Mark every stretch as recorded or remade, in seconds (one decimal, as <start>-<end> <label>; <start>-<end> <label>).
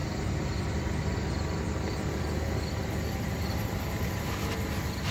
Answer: 0.0-5.1 recorded